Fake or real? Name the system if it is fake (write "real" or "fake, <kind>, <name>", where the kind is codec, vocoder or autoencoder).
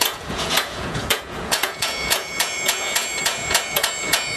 fake, vocoder, Vocos